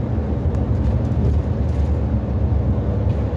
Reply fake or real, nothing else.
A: real